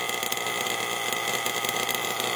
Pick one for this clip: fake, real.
real